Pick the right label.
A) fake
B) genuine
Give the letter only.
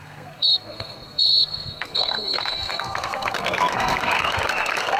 A